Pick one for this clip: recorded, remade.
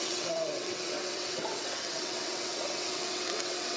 remade